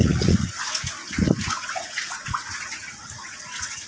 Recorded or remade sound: remade